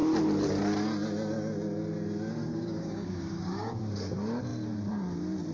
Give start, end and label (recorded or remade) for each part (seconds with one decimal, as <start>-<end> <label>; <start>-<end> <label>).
0.0-2.4 recorded; 2.4-3.8 remade; 3.8-5.5 recorded